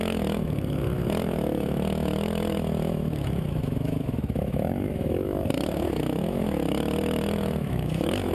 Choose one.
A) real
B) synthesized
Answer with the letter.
B